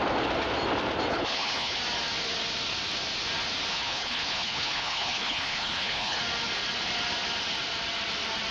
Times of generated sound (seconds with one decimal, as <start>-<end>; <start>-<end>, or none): 1.1-1.8; 3.7-6.2